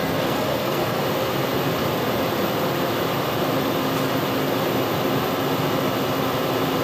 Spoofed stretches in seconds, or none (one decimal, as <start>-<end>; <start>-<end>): 0.0-1.0